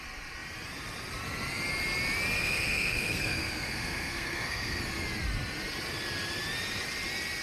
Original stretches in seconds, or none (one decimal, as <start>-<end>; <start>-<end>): 0.0-2.4; 4.8-7.4